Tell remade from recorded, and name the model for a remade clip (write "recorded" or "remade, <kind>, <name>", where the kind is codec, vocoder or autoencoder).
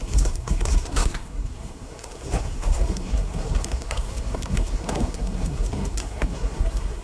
remade, codec, SNAC